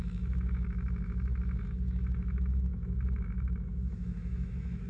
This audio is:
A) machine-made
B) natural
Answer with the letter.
A